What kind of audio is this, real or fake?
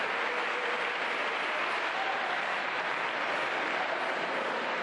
real